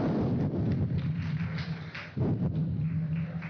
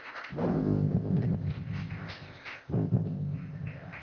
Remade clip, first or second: second